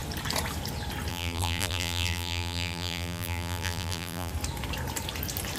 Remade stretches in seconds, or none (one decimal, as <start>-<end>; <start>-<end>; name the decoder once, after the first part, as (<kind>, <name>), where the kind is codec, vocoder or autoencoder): 1.1-4.3 (vocoder, BigVGAN v2)